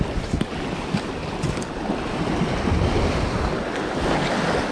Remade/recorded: recorded